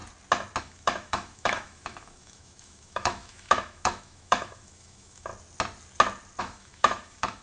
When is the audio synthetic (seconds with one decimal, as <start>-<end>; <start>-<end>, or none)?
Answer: 0.6-5.3; 6.4-7.4